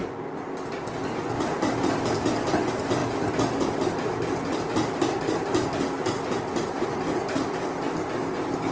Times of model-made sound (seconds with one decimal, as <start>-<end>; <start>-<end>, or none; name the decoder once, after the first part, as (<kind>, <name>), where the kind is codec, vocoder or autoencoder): none